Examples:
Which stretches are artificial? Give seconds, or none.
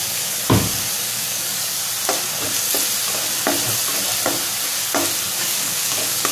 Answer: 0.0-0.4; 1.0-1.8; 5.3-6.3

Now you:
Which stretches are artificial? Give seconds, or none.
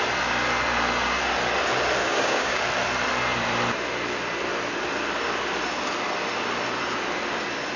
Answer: 2.0-2.6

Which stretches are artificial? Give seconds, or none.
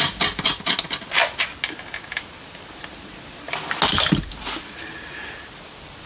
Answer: none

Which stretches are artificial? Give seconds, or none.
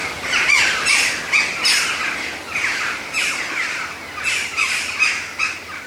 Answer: none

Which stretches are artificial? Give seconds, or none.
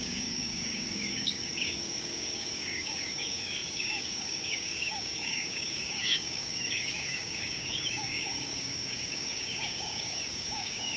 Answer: 0.0-11.0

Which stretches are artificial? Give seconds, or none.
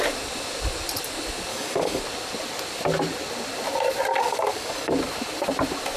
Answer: 1.5-2.0; 4.1-4.9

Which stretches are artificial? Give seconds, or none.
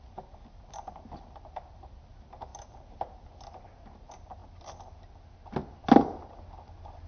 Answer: none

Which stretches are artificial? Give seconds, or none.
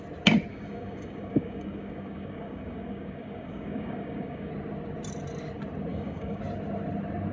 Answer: 0.5-4.5; 5.9-6.4